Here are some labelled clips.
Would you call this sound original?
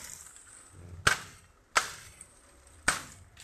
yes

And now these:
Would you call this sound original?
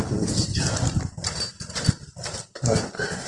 yes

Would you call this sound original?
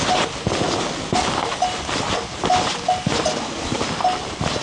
yes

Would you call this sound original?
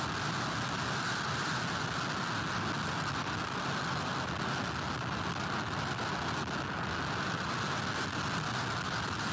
yes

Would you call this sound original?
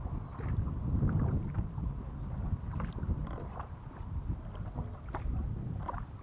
no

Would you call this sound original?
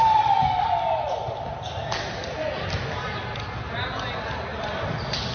yes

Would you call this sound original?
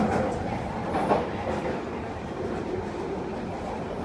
no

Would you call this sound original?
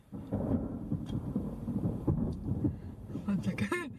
no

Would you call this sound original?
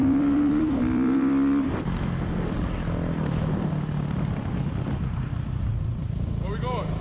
no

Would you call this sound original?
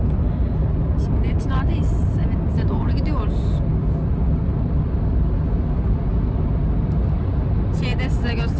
yes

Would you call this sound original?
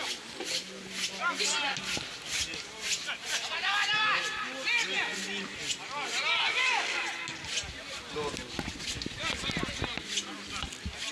yes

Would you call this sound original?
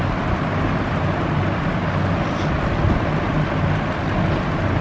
yes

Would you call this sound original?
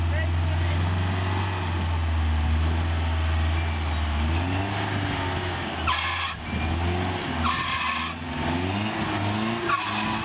yes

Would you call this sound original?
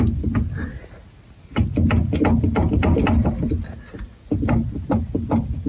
yes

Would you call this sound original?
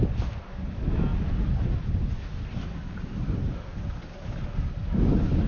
yes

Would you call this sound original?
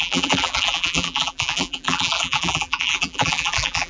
no